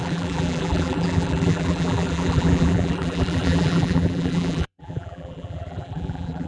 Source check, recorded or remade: remade